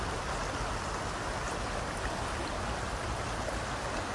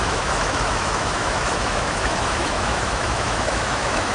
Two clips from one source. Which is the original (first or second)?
first